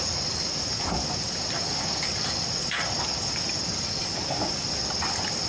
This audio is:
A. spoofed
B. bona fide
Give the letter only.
B